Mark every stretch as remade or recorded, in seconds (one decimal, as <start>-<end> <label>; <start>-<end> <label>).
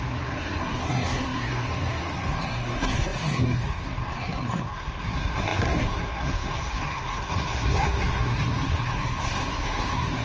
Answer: 0.0-10.2 remade